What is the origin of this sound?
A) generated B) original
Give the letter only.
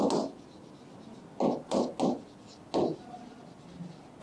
B